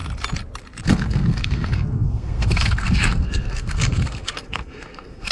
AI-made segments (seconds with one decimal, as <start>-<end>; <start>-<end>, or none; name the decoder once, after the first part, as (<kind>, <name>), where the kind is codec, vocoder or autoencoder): 0.8-5.3 (codec, SNAC)